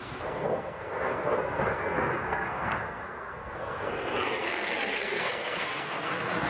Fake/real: fake